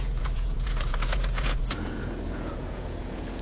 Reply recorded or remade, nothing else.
remade